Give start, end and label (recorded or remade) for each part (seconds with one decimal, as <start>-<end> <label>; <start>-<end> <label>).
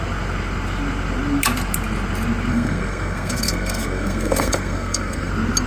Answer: 0.0-2.5 recorded; 2.5-5.3 remade; 5.3-5.7 recorded